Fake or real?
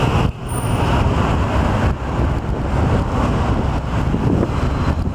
real